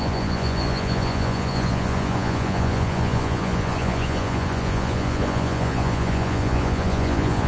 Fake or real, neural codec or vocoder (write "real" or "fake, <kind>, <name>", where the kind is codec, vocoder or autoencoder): fake, vocoder, Vocos